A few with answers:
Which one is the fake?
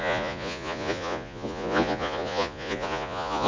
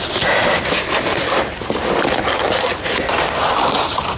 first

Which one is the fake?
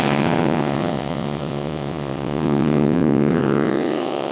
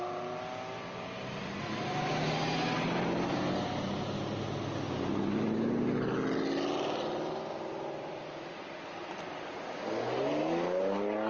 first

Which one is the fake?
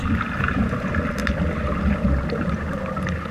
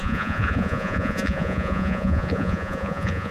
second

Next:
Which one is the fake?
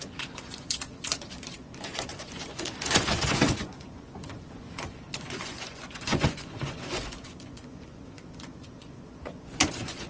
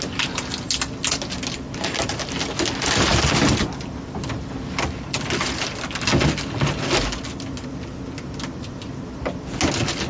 first